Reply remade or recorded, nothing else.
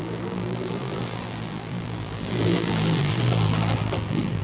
remade